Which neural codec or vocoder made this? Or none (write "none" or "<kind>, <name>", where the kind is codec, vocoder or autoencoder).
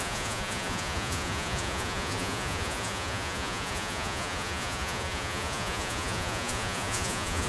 vocoder, Vocos